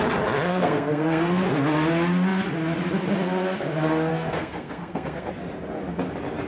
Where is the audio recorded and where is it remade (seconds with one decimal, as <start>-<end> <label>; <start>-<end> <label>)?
0.0-0.5 recorded; 0.5-1.4 remade; 1.4-4.1 recorded; 4.1-5.3 remade; 5.3-6.5 recorded